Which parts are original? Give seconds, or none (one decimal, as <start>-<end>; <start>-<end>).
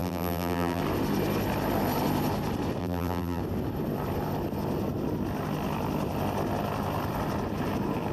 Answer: 0.8-2.8; 3.4-8.1